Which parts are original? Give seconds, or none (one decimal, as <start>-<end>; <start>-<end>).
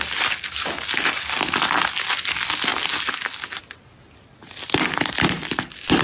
0.0-6.0